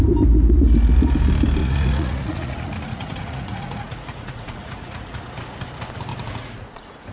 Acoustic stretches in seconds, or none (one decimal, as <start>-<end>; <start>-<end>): 0.0-1.6; 5.2-6.1